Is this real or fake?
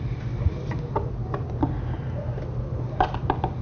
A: real